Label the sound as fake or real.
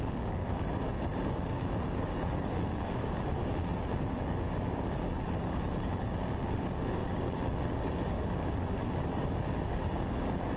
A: fake